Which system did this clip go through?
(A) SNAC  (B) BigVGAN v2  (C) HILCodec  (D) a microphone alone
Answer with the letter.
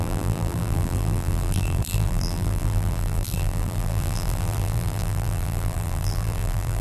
B